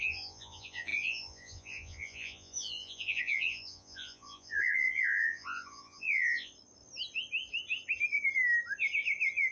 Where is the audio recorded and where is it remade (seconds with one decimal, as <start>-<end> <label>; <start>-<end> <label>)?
0.0-6.5 remade; 6.5-9.5 recorded